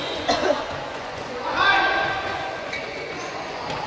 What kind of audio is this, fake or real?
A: fake